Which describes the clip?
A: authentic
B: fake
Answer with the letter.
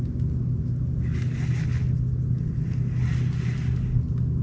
A